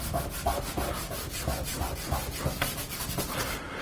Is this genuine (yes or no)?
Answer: yes